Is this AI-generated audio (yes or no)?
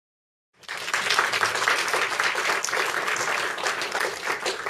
no